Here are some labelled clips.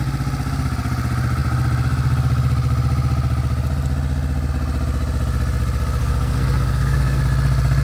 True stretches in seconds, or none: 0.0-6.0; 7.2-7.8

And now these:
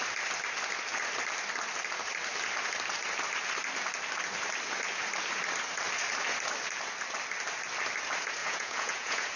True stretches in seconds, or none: 0.0-8.4

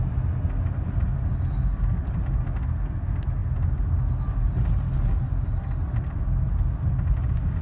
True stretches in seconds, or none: 0.0-7.6

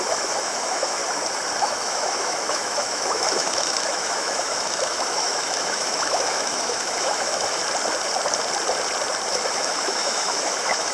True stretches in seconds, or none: 1.0-1.6; 7.6-9.3

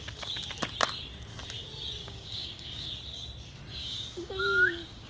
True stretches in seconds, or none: 0.0-2.0; 2.9-3.7

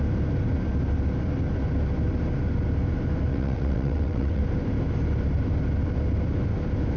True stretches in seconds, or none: 0.0-3.3; 4.4-7.0